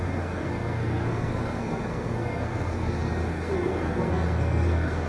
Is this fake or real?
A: fake